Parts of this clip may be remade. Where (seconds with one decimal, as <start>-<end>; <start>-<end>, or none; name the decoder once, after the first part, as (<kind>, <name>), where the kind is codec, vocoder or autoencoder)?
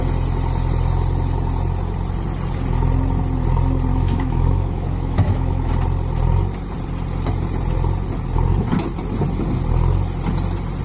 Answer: 3.9-5.7 (autoencoder, DAC-VAE)